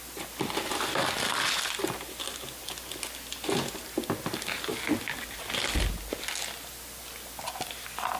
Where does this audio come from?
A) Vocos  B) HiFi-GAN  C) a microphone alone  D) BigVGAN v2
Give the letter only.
C